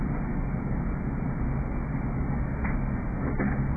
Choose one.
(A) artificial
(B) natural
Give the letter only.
B